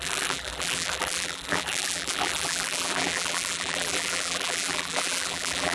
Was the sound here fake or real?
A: fake